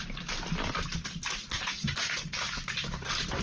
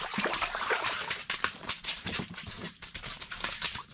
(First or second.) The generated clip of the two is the second